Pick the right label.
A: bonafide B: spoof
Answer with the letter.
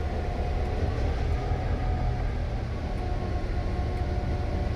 A